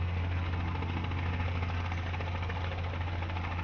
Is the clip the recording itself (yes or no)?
yes